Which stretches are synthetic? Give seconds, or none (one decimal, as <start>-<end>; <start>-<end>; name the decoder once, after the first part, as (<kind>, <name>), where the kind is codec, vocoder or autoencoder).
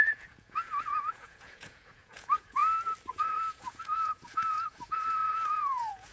0.0-2.6 (vocoder, Vocos); 3.1-6.1